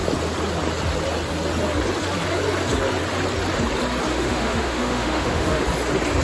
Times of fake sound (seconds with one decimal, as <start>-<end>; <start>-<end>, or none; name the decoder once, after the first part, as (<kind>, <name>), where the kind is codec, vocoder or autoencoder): 4.1-5.6 (autoencoder, DAC-VAE)